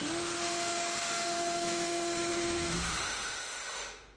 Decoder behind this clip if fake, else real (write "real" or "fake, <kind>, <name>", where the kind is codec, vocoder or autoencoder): fake, autoencoder, DAC-VAE